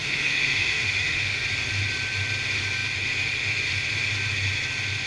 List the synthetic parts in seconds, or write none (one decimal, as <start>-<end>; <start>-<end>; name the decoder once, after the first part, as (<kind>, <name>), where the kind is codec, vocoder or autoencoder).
0.0-1.4 (autoencoder, DAC-VAE)